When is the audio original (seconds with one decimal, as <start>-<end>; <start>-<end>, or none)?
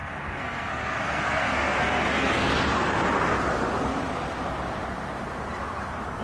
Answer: 2.5-6.2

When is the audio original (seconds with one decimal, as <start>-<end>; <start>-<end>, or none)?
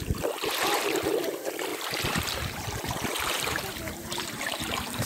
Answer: 0.0-1.7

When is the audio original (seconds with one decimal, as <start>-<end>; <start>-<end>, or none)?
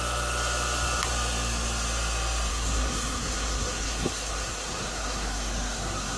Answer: 0.0-2.5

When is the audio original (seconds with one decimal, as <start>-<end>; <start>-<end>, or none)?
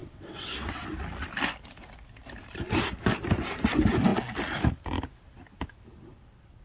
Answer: 0.9-6.6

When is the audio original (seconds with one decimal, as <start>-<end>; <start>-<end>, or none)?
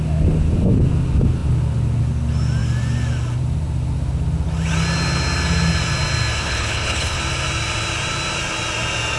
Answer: 0.0-6.4; 7.2-9.2